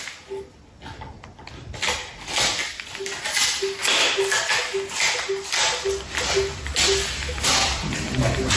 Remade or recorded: recorded